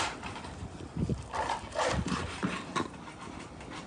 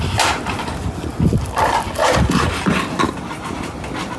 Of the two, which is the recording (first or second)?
second